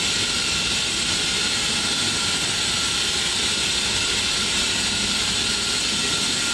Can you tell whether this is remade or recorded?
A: recorded